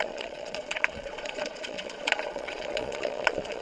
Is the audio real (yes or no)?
no